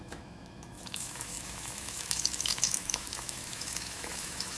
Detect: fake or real fake